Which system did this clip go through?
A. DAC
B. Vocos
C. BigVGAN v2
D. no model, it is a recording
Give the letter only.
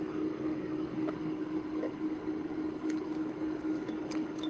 A